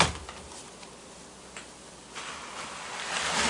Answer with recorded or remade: recorded